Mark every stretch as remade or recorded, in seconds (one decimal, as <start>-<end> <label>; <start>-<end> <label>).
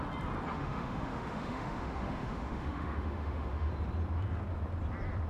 0.0-0.5 recorded; 0.5-3.7 remade; 3.7-5.3 recorded